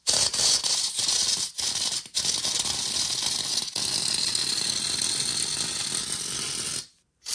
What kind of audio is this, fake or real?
real